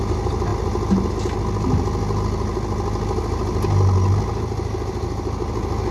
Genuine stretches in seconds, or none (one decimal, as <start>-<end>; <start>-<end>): 0.0-5.9